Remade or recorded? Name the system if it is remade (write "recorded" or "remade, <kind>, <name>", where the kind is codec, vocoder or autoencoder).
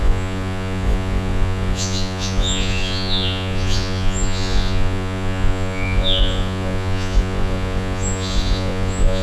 remade, vocoder, Vocos